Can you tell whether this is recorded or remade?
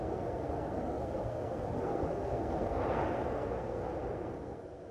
remade